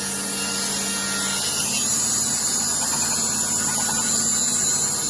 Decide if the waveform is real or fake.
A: real